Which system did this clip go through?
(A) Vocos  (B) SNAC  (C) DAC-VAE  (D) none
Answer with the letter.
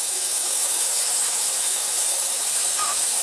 C